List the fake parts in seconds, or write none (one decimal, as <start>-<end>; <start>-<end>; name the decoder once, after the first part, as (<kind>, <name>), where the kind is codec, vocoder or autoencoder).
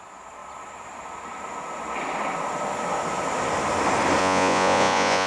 4.2-5.3 (vocoder, Vocos)